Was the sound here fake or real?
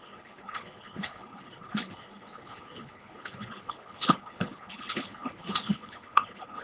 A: fake